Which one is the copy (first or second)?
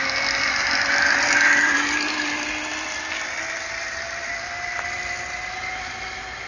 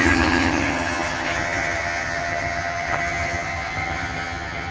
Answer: second